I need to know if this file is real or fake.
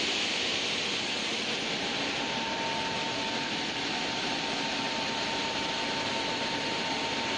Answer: fake